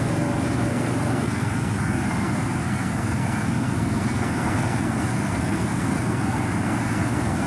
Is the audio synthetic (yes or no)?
yes